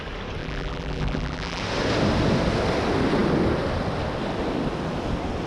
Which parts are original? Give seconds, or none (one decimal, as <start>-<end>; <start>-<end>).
0.0-0.4; 1.6-5.5